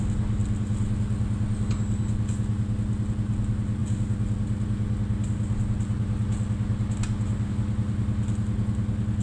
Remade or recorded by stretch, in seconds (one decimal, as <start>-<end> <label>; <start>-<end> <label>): 0.0-9.2 recorded

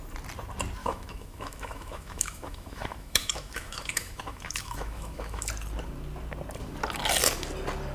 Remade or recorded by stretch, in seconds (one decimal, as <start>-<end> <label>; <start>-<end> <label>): 0.0-0.8 recorded; 0.8-5.5 remade; 5.5-7.9 recorded

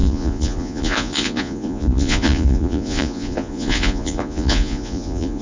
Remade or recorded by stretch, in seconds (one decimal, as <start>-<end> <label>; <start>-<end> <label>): 0.0-5.4 remade